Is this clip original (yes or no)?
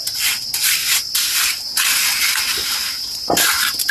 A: yes